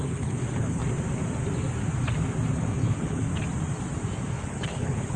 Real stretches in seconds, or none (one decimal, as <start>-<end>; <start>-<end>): 0.8-2.5; 3.3-4.3